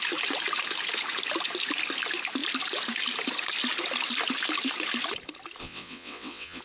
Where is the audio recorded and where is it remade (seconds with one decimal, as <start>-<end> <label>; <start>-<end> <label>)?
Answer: 0.0-5.6 recorded; 5.6-6.6 remade